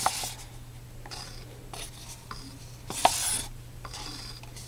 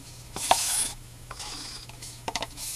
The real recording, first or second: first